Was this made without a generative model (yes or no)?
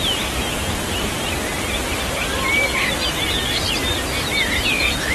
yes